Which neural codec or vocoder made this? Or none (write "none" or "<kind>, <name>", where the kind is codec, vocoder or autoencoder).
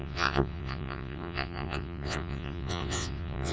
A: vocoder, WaveNeXt